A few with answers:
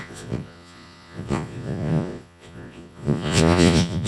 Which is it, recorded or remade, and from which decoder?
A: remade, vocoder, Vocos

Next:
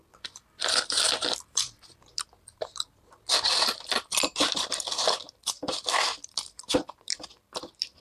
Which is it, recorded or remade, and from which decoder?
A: remade, vocoder, BigVGAN v2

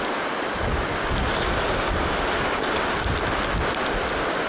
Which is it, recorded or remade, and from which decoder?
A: recorded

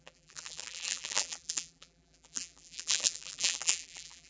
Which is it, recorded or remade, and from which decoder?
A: remade, vocoder, BigVGAN v2